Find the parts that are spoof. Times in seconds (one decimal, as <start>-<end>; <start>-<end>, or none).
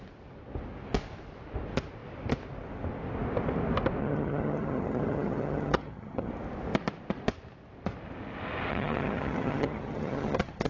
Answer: 4.0-6.3; 8.7-10.7